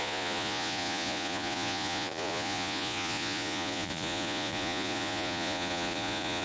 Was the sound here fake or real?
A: fake